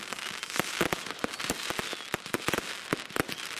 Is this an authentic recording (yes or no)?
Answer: yes